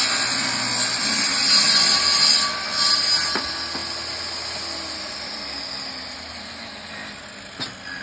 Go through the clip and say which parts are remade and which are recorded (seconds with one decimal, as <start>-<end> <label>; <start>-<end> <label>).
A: 0.0-8.0 recorded

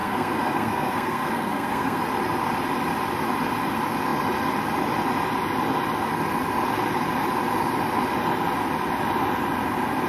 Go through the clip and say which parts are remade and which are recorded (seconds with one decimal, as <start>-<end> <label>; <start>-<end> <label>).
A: 0.0-2.0 remade; 2.0-10.1 recorded